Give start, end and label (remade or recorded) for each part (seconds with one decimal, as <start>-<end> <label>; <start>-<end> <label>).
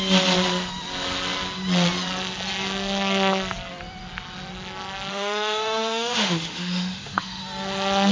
0.0-5.1 recorded; 5.1-7.4 remade; 7.4-8.1 recorded